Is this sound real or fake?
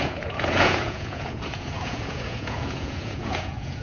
fake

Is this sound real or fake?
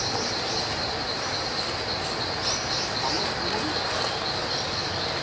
real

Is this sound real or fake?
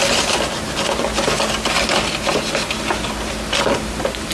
real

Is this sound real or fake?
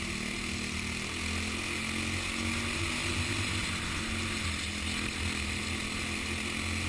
real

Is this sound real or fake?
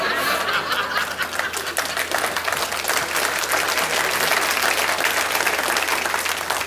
real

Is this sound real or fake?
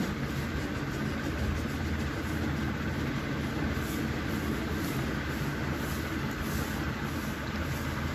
real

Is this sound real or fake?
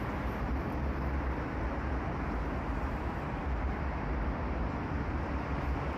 real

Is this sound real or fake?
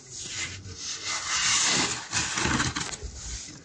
real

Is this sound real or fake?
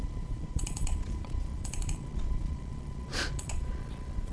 fake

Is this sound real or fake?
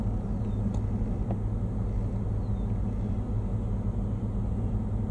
real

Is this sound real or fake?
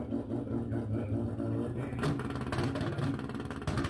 real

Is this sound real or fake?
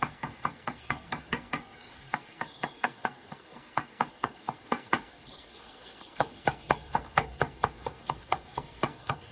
fake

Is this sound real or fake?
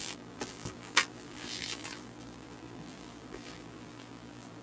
fake